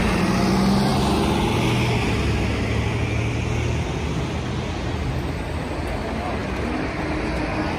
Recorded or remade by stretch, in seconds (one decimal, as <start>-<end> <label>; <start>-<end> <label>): 0.0-7.8 recorded